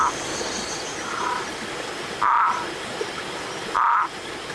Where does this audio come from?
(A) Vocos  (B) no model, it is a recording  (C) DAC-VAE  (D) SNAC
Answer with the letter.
B